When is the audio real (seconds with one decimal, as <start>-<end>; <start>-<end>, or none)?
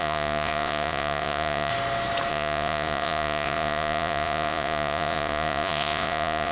1.7-2.3